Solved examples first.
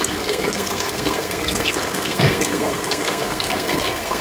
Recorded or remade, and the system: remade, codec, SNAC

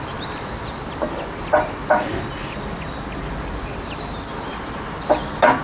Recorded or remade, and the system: recorded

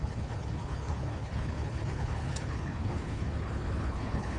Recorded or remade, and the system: remade, codec, HILCodec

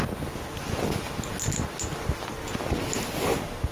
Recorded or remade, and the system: recorded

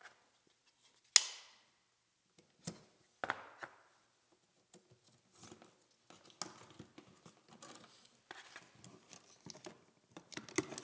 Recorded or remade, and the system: recorded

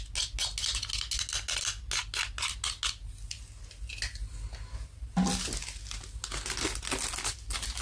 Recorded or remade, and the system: recorded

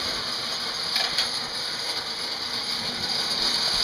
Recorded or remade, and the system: recorded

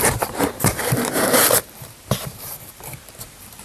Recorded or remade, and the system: remade, vocoder, BigVGAN v2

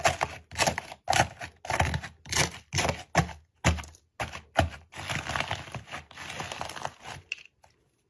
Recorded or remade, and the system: recorded